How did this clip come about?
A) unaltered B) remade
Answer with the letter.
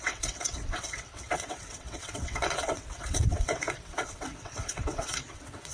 B